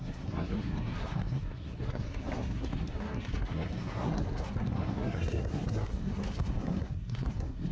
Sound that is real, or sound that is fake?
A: fake